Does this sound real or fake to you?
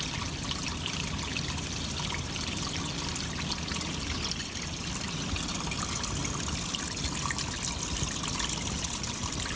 real